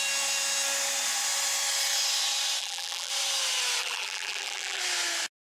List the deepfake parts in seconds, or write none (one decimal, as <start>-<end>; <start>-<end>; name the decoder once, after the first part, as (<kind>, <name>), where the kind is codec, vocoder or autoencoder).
2.6-3.1 (vocoder, BigVGAN v2); 3.8-4.8